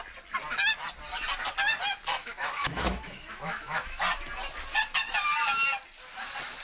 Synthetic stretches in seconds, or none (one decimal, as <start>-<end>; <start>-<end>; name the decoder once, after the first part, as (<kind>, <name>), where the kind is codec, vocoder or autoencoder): 2.2-4.0 (autoencoder, DAC-VAE)